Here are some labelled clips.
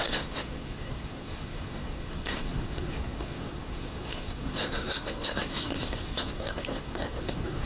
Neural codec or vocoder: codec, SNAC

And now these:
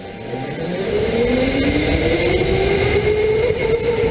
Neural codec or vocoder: none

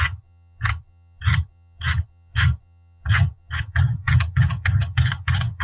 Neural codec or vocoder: vocoder, HiFi-GAN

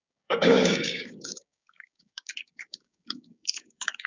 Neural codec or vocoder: codec, DAC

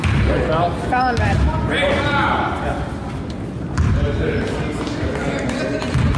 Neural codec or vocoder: none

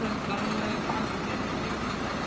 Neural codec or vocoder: none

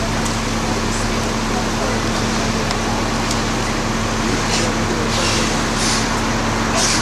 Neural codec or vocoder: none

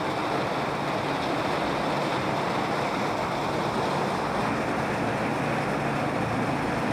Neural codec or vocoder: none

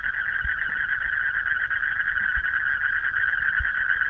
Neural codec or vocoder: none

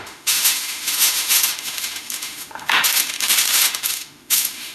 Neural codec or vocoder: autoencoder, DAC-VAE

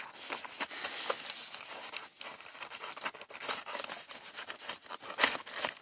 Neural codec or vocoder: none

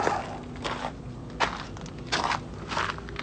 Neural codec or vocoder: none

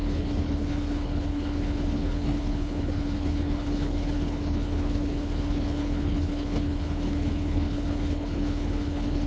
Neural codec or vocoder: codec, HILCodec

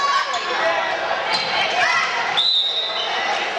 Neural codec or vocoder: none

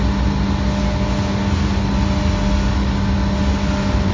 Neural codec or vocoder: none